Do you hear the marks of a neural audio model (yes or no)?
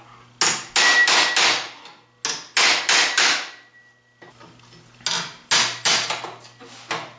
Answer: no